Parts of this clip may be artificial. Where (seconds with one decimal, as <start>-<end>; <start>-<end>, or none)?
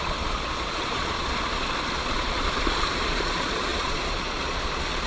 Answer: 0.0-5.1